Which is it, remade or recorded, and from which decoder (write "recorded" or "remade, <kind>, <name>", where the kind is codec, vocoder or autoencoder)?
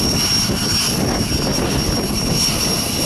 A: recorded